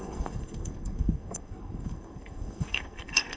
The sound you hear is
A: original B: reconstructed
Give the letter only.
B